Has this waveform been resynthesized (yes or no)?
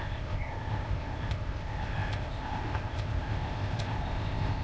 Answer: yes